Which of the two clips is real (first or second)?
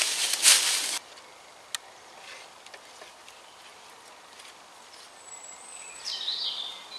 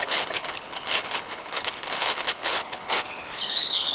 first